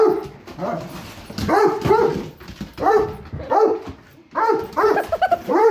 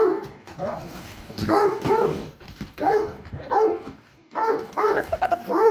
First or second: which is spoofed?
second